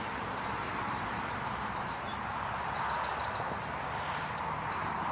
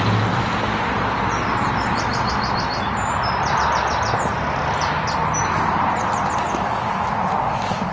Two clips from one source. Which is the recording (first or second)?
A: second